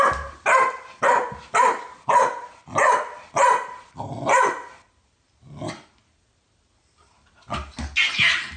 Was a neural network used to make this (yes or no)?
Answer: no